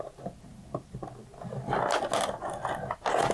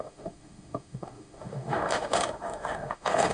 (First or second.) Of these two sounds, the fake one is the second